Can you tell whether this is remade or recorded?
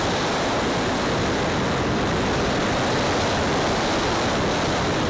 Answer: recorded